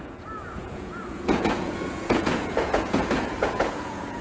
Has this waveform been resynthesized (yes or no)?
yes